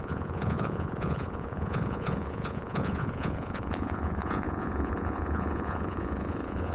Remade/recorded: remade